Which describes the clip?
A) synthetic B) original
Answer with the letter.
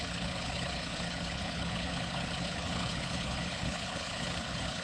A